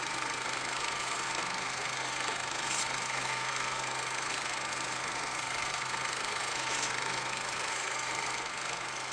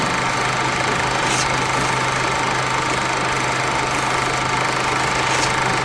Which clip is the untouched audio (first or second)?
second